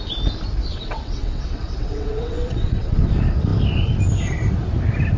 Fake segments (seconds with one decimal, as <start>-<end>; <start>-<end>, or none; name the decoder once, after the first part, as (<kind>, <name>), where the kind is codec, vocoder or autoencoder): 0.7-3.0 (vocoder, WaveNeXt)